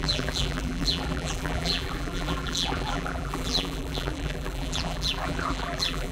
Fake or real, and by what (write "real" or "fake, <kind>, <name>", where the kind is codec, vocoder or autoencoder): fake, vocoder, BigVGAN v2